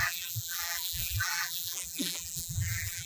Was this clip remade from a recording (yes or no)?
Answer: yes